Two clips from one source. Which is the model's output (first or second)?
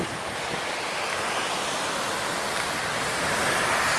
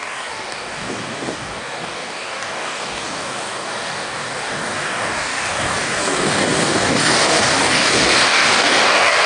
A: second